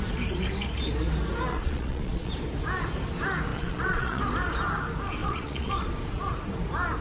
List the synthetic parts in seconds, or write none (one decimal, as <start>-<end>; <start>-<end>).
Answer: 1.5-2.3; 3.5-4.2; 5.2-5.7